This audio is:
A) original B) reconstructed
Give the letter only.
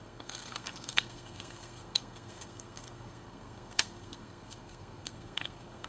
B